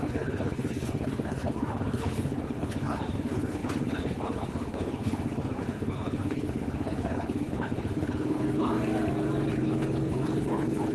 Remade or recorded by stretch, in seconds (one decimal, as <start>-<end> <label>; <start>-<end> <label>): 0.0-8.7 remade; 8.7-9.5 recorded; 9.5-10.9 remade